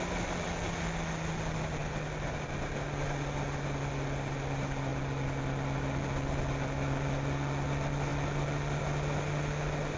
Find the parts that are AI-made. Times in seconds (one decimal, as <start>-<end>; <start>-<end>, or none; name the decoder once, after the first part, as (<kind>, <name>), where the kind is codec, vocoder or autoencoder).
none